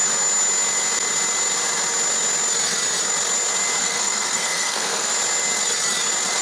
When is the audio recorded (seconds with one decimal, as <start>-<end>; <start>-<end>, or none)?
0.0-3.8; 5.1-6.4